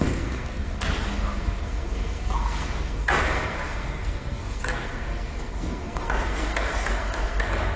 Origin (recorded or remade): remade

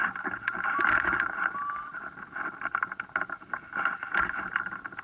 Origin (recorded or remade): recorded